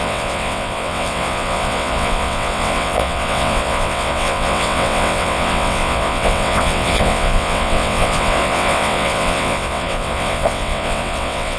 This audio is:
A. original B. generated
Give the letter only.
B